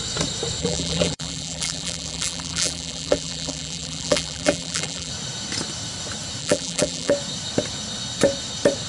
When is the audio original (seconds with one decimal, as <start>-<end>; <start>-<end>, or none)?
0.0-0.6; 5.1-6.4; 7.1-8.9